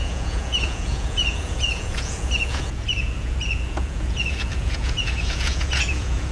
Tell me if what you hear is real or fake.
fake